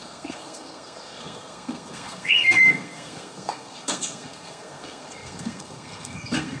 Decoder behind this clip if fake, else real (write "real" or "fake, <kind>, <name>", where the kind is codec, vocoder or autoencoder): fake, codec, SNAC